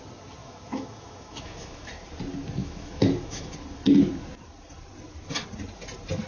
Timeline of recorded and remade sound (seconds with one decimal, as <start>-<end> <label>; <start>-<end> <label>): 0.0-0.4 recorded; 0.4-1.9 remade; 1.9-2.6 recorded; 2.6-3.5 remade; 3.5-6.3 recorded

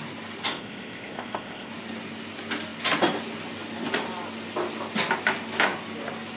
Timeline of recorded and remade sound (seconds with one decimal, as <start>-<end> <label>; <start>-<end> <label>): 0.0-0.5 recorded; 0.5-1.7 remade; 1.7-6.4 recorded